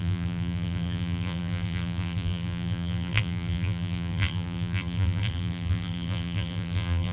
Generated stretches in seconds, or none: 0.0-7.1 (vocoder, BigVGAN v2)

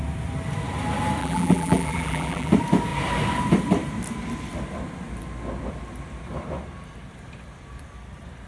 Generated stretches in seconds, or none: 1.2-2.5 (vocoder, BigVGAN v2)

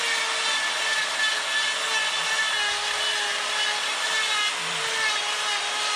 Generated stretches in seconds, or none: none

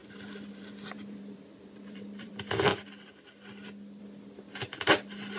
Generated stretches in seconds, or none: 0.0-2.3 (vocoder, BigVGAN v2)